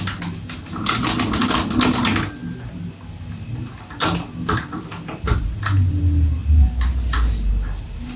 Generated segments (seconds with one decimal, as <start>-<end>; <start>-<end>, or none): 6.4-7.5